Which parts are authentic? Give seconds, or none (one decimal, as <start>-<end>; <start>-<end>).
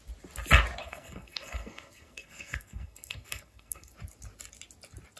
0.0-0.8; 3.9-5.2